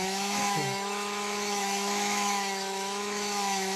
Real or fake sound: fake